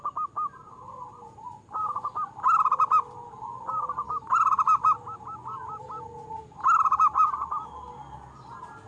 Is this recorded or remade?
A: recorded